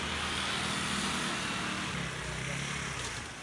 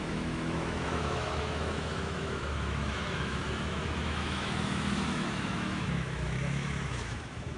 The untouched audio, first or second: first